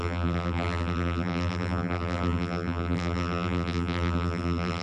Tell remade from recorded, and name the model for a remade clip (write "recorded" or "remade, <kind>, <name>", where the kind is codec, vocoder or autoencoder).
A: remade, vocoder, BigVGAN v2